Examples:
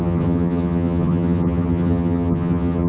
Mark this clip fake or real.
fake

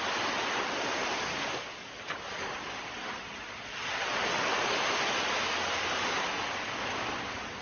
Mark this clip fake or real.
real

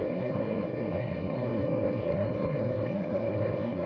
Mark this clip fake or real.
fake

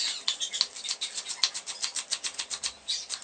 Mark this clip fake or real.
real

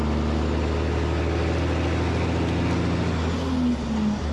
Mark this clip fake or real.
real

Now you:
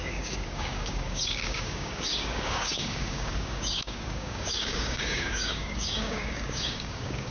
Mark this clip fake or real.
fake